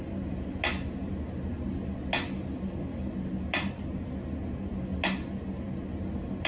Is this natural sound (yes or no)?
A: yes